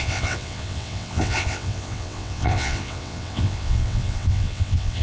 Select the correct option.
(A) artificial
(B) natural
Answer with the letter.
A